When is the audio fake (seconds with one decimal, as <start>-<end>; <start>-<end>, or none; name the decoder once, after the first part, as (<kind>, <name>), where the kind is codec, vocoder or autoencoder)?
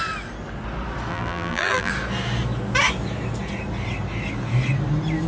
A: 1.1-1.9 (vocoder, BigVGAN v2)